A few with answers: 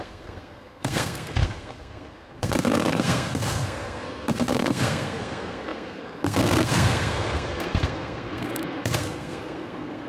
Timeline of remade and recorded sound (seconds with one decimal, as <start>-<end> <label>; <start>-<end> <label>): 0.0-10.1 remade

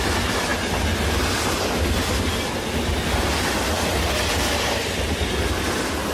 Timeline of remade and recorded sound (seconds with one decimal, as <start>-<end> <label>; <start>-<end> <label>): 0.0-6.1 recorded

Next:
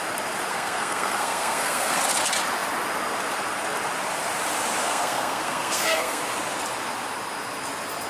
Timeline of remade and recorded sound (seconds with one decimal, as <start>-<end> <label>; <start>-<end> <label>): 0.0-0.5 recorded; 0.5-2.0 remade; 2.0-4.8 recorded; 4.8-6.2 remade; 6.2-8.1 recorded

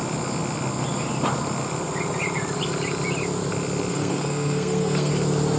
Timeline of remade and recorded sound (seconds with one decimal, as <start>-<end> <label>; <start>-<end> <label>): 0.0-3.9 recorded; 3.9-5.1 remade; 5.1-5.6 recorded

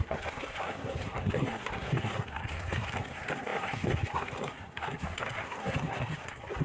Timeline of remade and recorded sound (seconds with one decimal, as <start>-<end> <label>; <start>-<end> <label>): 0.0-6.6 remade